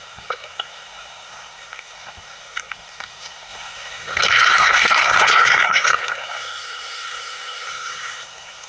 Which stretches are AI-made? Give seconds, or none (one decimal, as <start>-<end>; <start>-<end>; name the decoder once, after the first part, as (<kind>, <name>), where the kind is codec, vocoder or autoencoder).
0.0-8.7 (codec, SNAC)